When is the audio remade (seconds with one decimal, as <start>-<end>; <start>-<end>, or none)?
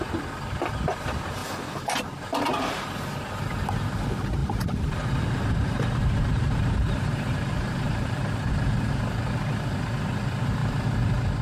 4.4-9.0